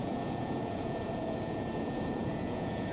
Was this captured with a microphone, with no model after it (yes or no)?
no